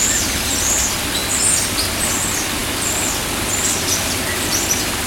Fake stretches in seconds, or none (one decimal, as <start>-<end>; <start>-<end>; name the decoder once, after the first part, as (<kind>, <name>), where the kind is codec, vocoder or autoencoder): none

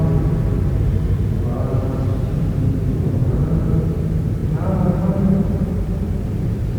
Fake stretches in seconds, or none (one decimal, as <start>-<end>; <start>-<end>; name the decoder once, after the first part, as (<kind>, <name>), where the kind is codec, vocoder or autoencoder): 3.2-3.7 (vocoder, BigVGAN v2); 4.4-6.8